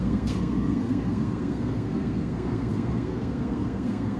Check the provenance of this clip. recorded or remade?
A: remade